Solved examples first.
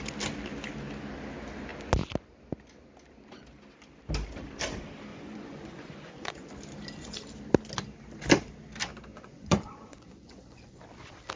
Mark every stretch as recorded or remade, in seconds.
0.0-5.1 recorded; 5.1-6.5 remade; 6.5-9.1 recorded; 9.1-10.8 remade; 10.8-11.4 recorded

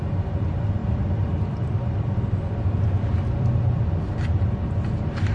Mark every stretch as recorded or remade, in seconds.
0.0-0.8 recorded; 0.8-4.0 remade; 4.0-5.3 recorded

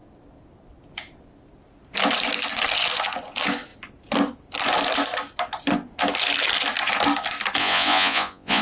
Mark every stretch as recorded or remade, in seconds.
0.0-7.6 recorded; 7.6-8.6 remade